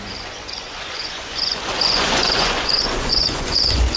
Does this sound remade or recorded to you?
remade